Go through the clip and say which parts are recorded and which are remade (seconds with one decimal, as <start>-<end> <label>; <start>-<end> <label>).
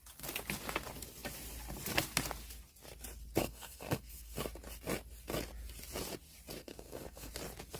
0.0-3.4 recorded; 3.4-4.4 remade; 4.4-6.6 recorded; 6.6-7.3 remade; 7.3-7.8 recorded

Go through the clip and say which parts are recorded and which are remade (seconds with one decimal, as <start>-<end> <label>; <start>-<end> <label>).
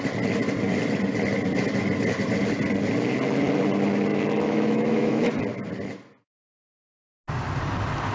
0.0-4.1 recorded; 4.1-5.3 remade; 5.3-8.1 recorded